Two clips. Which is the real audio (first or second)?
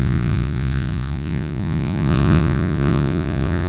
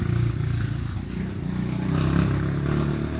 second